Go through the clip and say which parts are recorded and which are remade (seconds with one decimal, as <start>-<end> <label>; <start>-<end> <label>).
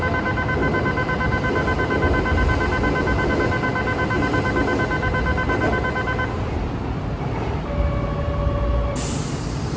0.0-9.8 recorded